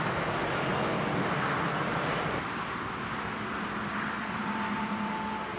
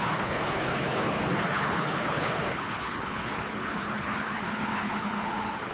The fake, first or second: second